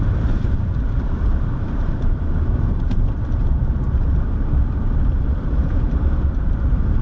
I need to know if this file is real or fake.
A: fake